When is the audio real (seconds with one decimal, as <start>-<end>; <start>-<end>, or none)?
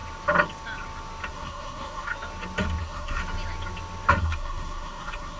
0.0-1.3; 2.1-2.8; 3.2-4.2